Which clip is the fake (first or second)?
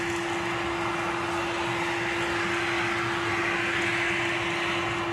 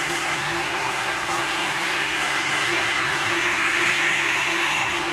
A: second